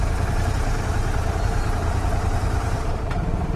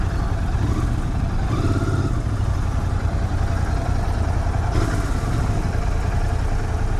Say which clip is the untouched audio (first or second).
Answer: second